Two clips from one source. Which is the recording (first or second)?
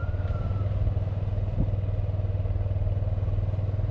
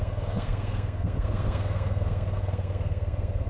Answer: first